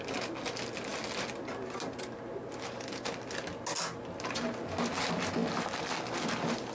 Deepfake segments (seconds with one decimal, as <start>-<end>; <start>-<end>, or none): none